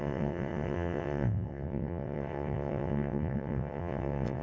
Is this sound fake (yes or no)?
yes